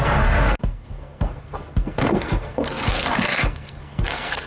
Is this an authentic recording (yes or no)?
no